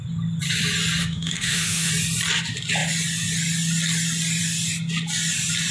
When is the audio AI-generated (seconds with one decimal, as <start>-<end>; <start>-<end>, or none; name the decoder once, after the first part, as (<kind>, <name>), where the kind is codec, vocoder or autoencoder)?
1.0-1.9 (autoencoder, DAC-VAE)